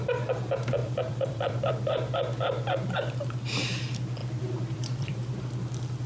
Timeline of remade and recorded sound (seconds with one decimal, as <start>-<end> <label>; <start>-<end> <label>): 0.0-0.8 recorded; 0.8-1.7 remade; 1.7-4.2 recorded; 4.2-5.4 remade; 5.4-6.1 recorded